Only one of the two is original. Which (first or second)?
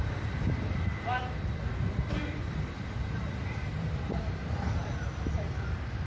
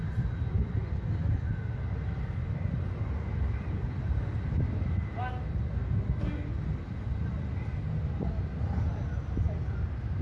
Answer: second